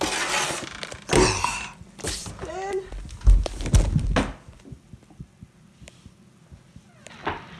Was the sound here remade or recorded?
recorded